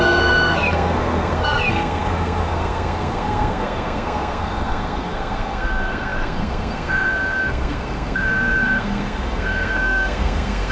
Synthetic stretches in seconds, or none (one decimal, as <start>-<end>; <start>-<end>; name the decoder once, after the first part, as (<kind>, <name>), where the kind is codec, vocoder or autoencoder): 0.0-10.7 (codec, SNAC)